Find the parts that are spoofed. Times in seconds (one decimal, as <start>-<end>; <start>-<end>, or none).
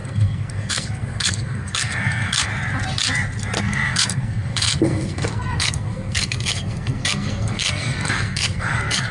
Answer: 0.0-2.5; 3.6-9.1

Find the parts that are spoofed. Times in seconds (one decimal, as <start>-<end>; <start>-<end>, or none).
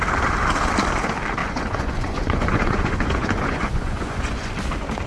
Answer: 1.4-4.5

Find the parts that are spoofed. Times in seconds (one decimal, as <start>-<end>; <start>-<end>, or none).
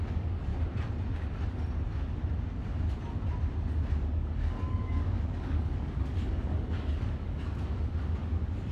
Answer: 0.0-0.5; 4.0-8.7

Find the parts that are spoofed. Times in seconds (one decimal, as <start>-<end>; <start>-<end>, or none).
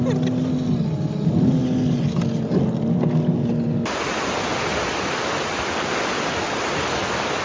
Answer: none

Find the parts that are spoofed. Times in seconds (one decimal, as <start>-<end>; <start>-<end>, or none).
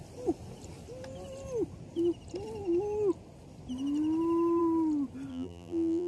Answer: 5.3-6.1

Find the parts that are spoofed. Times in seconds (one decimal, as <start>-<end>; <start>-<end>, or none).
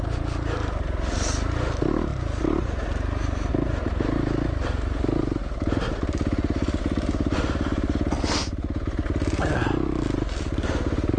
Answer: none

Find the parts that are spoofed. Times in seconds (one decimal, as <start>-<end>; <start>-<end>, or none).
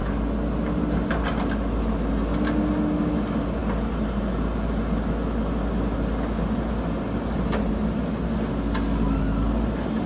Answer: none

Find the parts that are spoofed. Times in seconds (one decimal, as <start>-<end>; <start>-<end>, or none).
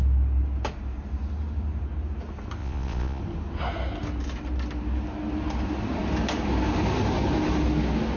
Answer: 2.6-3.2